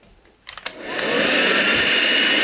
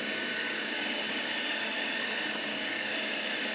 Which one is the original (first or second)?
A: first